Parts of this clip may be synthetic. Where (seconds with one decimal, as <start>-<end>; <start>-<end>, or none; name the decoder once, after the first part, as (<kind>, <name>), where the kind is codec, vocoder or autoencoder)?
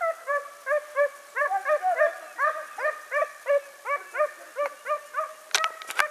1.4-3.6 (vocoder, BigVGAN v2)